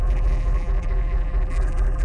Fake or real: fake